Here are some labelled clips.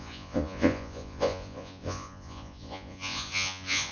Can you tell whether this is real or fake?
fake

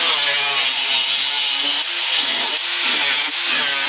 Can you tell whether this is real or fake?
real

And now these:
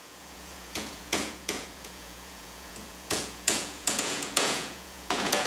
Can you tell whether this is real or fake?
fake